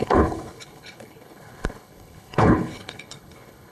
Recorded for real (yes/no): no